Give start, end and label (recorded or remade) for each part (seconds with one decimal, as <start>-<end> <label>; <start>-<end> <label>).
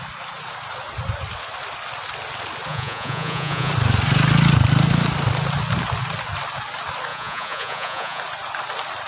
0.0-2.7 recorded; 2.7-3.7 remade; 3.7-7.1 recorded; 7.1-8.2 remade; 8.2-9.1 recorded